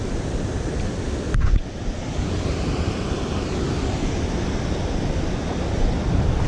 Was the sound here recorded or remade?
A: recorded